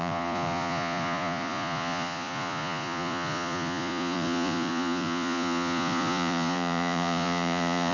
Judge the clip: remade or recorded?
remade